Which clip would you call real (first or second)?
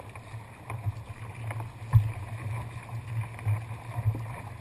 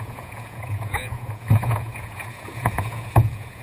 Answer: first